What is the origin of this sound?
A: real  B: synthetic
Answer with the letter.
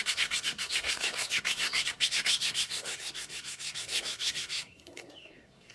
B